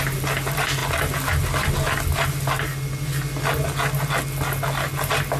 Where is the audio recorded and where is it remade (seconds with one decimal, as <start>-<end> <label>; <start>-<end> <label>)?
0.0-5.4 recorded